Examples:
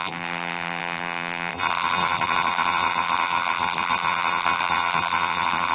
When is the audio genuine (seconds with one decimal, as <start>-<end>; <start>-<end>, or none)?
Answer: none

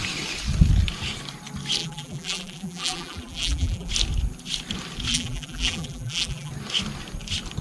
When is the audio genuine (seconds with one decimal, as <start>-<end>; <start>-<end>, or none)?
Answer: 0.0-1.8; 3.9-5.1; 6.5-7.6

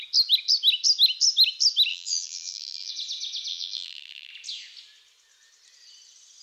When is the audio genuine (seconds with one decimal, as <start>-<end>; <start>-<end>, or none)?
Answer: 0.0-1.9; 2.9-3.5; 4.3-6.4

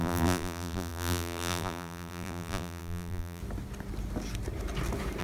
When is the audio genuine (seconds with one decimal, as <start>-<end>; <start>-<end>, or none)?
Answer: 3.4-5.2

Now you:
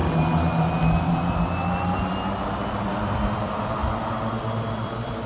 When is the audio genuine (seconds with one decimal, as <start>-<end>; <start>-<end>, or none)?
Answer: 0.0-2.4; 3.8-4.7

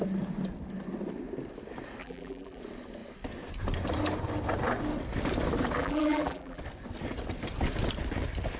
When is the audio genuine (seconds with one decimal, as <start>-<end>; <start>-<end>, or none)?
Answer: 0.0-2.0; 2.6-5.8; 6.6-8.6

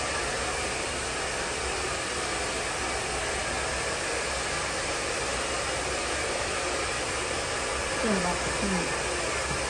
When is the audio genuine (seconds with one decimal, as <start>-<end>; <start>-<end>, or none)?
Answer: 0.0-9.7